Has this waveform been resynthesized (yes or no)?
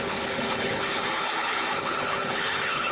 yes